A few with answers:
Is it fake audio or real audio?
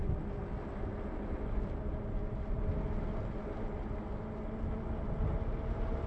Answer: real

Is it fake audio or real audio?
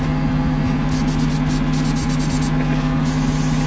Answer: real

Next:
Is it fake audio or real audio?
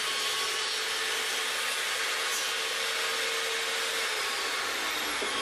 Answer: real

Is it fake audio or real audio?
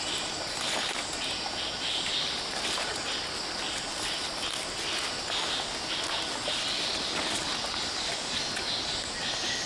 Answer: real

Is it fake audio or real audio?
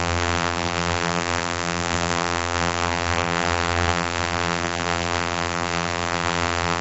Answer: fake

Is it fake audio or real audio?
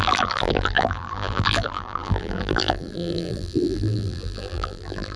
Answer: fake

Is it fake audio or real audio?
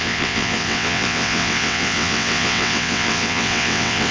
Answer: fake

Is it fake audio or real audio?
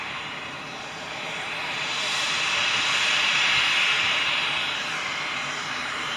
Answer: fake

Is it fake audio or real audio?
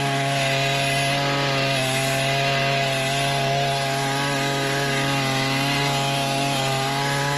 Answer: real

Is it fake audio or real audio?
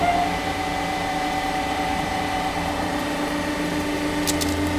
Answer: fake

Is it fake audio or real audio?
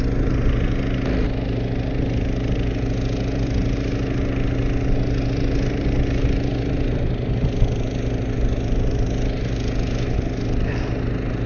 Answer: real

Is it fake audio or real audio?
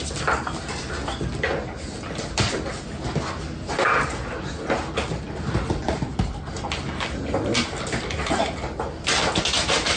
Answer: real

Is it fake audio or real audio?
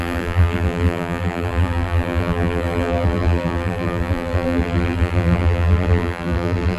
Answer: fake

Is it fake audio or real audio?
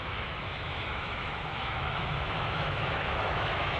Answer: fake